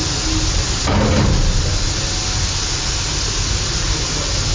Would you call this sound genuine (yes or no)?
yes